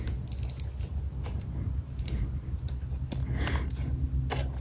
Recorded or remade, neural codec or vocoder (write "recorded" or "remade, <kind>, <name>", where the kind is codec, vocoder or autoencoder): recorded